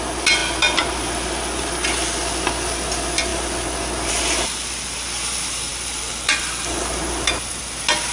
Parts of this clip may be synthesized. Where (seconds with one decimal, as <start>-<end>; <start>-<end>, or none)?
none